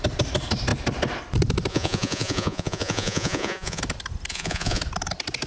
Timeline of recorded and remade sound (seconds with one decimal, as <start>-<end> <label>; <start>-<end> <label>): 0.0-1.7 recorded; 1.7-3.8 remade; 3.8-4.3 recorded; 4.3-4.8 remade; 4.8-5.5 recorded